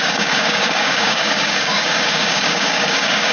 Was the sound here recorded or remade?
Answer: remade